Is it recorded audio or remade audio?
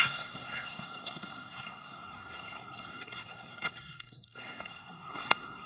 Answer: remade